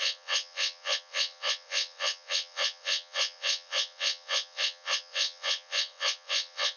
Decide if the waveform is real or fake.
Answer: fake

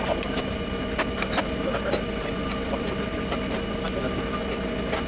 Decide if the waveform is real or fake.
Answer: real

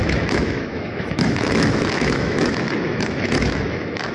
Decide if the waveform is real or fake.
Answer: fake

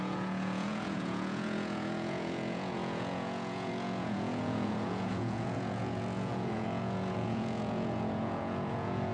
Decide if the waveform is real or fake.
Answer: fake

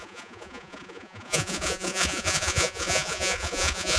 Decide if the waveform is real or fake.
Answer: fake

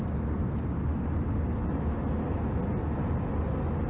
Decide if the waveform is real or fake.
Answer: real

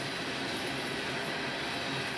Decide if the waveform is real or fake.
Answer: real